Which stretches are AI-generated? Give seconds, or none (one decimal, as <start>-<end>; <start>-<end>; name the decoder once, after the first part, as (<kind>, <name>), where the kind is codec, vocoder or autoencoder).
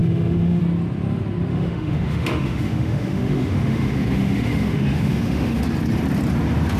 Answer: 0.0-0.6 (autoencoder, DAC-VAE); 1.5-5.6